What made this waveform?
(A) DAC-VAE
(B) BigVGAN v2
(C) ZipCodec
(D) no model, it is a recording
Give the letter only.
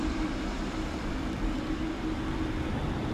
B